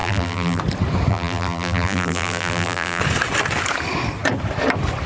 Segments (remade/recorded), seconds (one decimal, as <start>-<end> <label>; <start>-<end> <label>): 0.0-0.6 remade; 0.6-1.1 recorded; 1.1-3.0 remade; 3.0-5.1 recorded